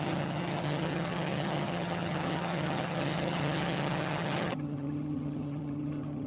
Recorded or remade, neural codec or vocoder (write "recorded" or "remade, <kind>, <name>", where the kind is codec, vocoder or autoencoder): remade, vocoder, HiFi-GAN